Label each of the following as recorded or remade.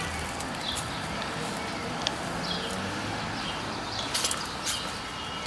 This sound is recorded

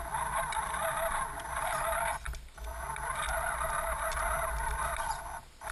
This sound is recorded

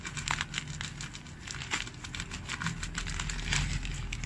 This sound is recorded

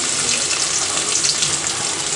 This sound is recorded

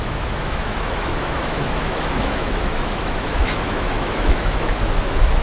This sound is remade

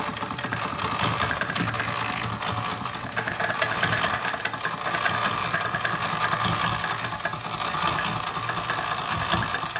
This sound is recorded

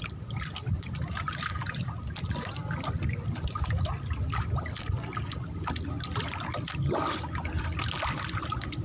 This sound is recorded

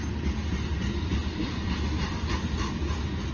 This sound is recorded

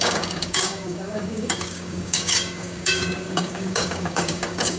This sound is remade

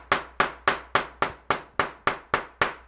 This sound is recorded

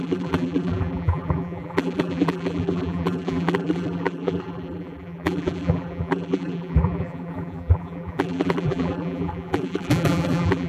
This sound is remade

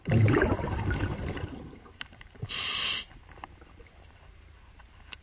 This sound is remade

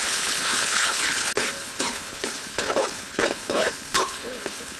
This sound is remade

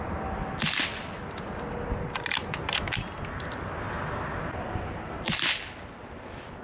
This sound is recorded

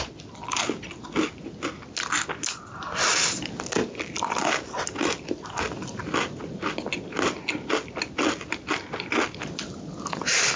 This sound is recorded